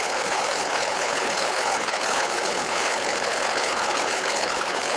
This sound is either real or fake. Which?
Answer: fake